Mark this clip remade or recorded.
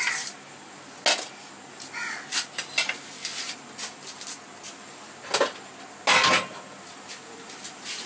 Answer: recorded